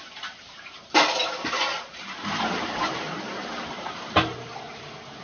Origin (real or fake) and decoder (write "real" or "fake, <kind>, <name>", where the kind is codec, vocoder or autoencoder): fake, vocoder, BigVGAN v2